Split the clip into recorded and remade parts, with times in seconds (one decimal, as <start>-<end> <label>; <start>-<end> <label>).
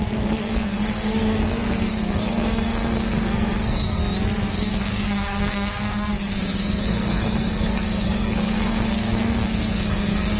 0.0-4.0 remade; 4.0-4.5 recorded; 4.5-10.4 remade